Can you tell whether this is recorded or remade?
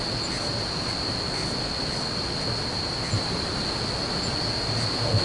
recorded